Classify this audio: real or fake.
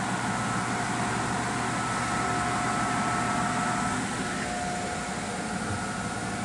real